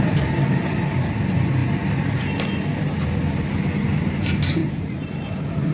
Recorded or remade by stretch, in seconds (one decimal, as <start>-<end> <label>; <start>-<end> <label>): 0.0-1.6 remade; 1.6-4.0 recorded; 4.0-5.7 remade